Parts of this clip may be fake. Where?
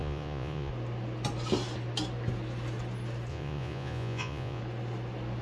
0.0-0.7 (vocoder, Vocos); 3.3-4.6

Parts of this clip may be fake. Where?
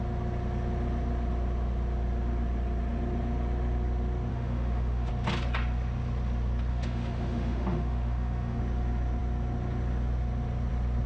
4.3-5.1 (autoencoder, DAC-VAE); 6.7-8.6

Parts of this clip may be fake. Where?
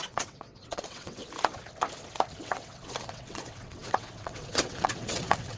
0.0-1.2 (vocoder, WaveNeXt); 2.4-5.6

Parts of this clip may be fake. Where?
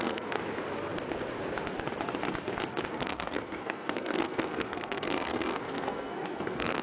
0.0-0.4 (codec, SNAC); 2.9-6.8